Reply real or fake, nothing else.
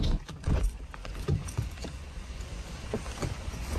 fake